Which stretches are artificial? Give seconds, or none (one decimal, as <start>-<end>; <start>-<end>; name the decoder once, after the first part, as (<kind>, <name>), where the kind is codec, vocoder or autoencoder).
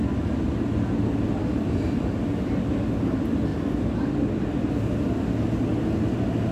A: none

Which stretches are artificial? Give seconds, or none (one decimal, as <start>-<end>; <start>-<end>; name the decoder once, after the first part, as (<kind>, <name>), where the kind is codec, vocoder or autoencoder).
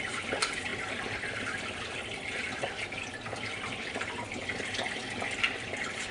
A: 0.7-3.8 (vocoder, BigVGAN v2); 5.0-6.1